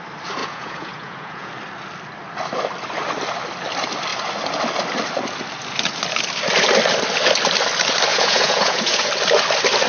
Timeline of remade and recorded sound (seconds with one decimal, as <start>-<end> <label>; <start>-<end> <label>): 0.0-0.4 recorded; 0.4-1.5 remade; 1.5-8.1 recorded; 8.1-9.1 remade; 9.1-9.9 recorded

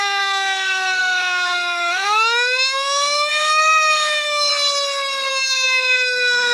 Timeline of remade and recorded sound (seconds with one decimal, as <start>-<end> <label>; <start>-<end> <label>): 0.0-4.5 remade; 4.5-5.3 recorded; 5.3-6.5 remade

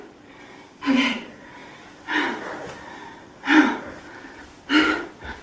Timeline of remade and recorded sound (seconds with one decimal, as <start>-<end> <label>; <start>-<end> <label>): 0.0-5.4 recorded

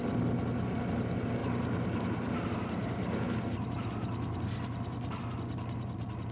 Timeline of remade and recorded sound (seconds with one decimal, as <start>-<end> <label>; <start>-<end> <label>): 0.0-6.3 recorded

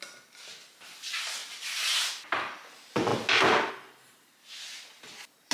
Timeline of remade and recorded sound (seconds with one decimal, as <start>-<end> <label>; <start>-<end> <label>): 0.0-1.4 recorded; 1.4-2.3 remade; 2.3-5.5 recorded